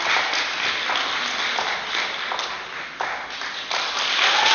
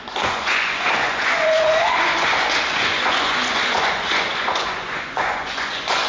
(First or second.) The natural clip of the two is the first